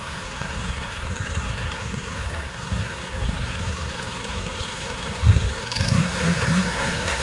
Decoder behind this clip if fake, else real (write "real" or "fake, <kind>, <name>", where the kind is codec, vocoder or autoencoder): fake, codec, SNAC